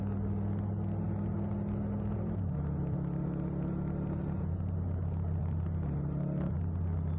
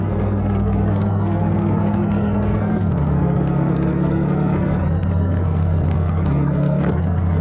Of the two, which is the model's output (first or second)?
second